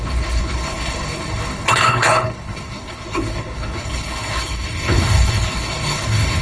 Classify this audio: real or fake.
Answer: fake